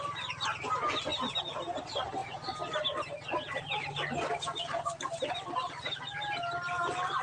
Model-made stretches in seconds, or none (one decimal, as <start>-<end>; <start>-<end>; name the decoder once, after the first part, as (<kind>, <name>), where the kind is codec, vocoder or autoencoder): none